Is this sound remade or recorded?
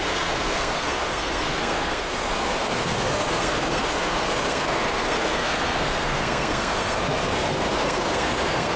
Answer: remade